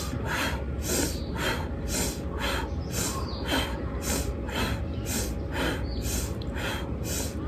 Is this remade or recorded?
recorded